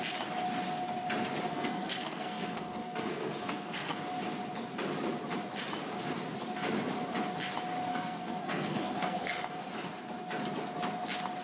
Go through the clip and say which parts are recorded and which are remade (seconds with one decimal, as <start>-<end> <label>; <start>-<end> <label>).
0.0-1.5 recorded; 1.5-4.0 remade; 4.0-7.9 recorded; 7.9-9.7 remade; 9.7-11.4 recorded